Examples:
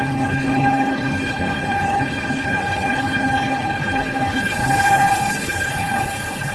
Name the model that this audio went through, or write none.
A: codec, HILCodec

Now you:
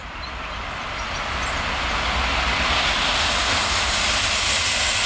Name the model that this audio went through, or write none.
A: none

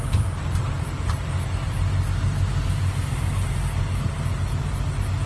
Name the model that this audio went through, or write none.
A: none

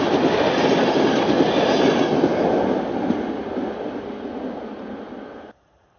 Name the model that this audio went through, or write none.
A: none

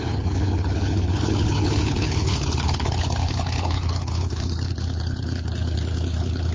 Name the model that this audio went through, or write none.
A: codec, HILCodec